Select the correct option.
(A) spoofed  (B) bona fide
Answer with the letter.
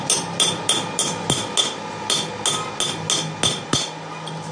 B